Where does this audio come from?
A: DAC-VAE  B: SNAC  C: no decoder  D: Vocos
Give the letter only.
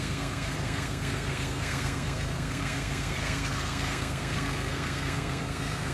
B